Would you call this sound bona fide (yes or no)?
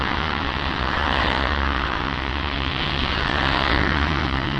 no